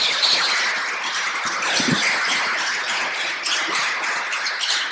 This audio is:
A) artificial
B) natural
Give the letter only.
B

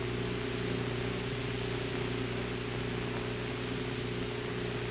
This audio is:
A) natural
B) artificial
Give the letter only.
A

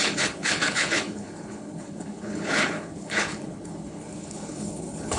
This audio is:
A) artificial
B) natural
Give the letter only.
A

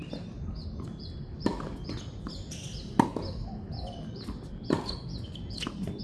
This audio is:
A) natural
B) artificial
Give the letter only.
A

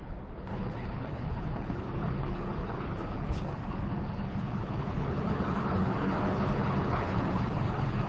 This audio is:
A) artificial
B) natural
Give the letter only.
A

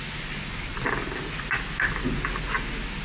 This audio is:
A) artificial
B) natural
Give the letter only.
B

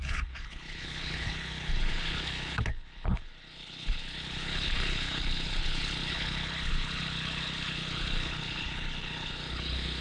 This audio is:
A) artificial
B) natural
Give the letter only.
A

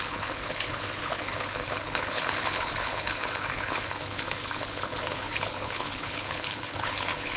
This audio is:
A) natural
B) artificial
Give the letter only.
B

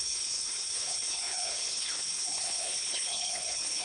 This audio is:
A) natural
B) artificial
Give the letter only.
B